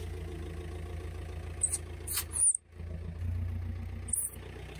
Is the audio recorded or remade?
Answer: recorded